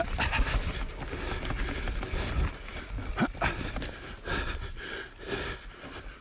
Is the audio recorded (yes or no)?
yes